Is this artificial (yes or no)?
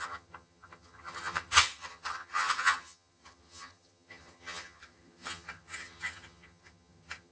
yes